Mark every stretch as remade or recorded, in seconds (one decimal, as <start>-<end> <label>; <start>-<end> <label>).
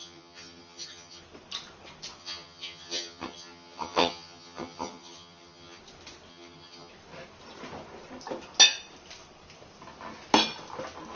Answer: 0.0-1.2 remade; 1.2-2.2 recorded; 2.2-5.8 remade; 5.8-6.3 recorded; 6.3-6.9 remade; 6.9-11.2 recorded